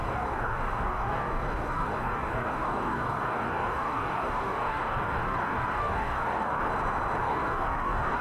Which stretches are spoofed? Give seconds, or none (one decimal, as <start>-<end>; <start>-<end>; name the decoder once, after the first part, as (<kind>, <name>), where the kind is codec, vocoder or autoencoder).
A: 0.0-6.6 (codec, DAC); 7.2-8.2